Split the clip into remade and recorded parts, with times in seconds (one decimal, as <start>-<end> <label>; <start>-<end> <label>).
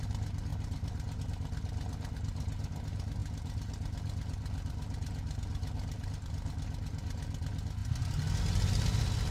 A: 0.0-0.5 recorded; 0.5-1.2 remade; 1.2-9.3 recorded